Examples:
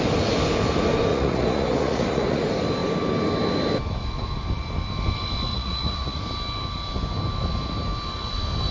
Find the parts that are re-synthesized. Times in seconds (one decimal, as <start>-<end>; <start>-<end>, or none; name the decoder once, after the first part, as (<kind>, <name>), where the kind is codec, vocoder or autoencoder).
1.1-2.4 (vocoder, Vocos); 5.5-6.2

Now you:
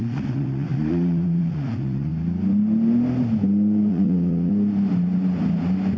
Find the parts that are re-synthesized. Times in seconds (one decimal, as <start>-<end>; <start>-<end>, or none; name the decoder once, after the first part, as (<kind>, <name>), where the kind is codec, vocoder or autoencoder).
0.0-2.1 (vocoder, Vocos); 3.9-4.5

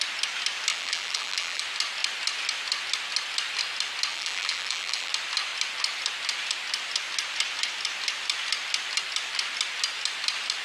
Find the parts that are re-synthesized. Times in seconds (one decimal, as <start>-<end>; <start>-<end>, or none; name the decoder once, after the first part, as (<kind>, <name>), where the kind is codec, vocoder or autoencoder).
0.7-1.6 (vocoder, BigVGAN v2); 4.1-5.1